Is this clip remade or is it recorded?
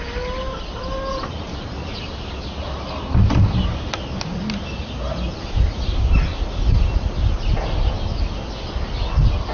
recorded